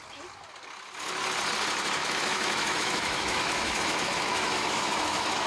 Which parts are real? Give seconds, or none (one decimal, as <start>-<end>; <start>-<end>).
0.0-2.0